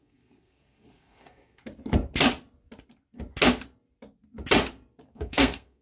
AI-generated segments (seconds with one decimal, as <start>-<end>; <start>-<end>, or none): 0.0-1.6; 5.1-5.8